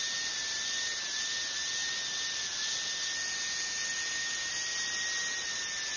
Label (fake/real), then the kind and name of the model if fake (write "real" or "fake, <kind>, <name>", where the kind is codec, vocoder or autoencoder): real